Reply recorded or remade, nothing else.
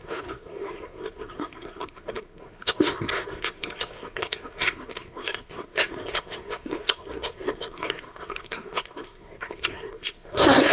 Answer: remade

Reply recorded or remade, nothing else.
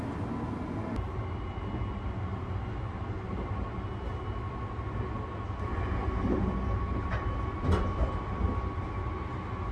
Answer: recorded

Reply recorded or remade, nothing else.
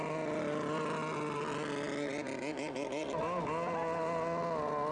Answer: recorded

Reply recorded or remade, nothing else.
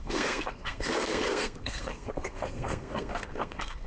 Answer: remade